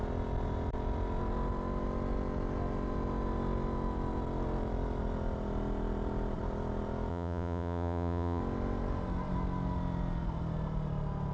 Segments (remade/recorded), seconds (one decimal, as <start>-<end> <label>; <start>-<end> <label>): 0.0-7.1 recorded; 7.1-8.4 remade; 8.4-11.3 recorded